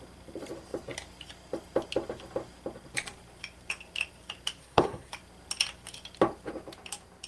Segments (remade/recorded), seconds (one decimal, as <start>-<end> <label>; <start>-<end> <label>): 0.0-4.6 recorded; 4.6-5.1 remade; 5.1-7.3 recorded